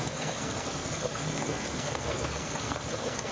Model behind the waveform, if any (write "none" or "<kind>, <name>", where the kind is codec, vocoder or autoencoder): codec, SNAC